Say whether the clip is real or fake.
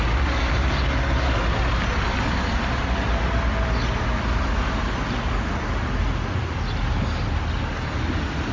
real